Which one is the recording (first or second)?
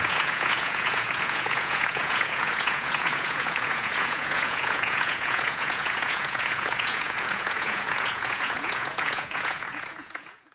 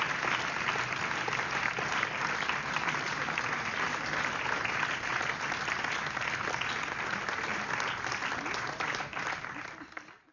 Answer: second